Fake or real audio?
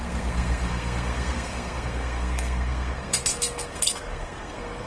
fake